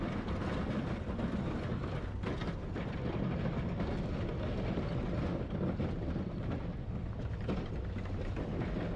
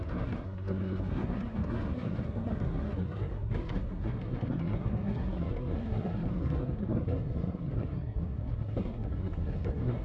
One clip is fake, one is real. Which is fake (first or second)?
second